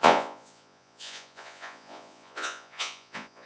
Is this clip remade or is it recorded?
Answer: remade